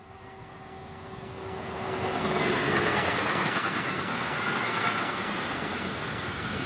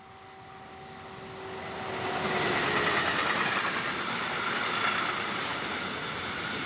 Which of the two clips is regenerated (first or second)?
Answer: first